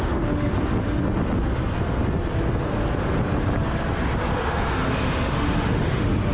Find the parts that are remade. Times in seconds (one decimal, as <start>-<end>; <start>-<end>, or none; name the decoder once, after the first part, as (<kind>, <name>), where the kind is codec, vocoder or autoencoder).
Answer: 0.0-0.5 (autoencoder, DAC-VAE); 4.3-6.3